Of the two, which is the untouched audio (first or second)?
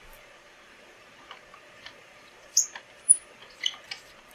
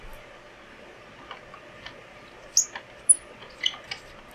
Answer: second